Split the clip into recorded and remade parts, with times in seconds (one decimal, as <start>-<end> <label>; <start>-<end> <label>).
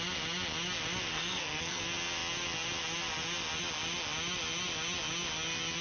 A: 0.0-1.1 recorded; 1.1-1.8 remade; 1.8-5.8 recorded